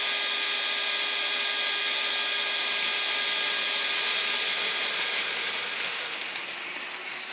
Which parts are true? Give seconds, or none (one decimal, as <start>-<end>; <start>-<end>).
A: 0.0-7.3